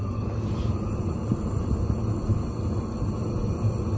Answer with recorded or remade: recorded